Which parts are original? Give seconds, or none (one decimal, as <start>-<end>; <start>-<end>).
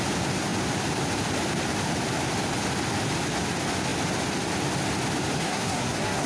0.0-5.4